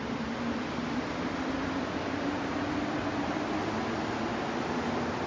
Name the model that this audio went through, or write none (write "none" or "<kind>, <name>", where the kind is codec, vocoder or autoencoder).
none